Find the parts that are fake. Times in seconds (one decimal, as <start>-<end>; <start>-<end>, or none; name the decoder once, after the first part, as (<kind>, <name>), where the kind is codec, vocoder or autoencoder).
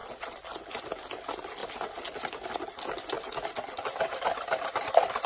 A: none